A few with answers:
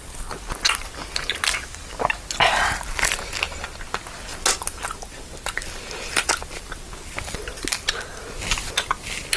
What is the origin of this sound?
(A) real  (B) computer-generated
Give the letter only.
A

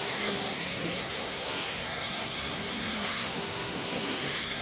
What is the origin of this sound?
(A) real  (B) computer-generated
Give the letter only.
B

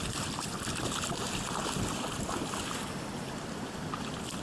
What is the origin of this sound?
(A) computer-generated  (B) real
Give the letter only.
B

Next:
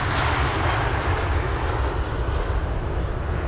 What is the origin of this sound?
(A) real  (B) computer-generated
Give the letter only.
A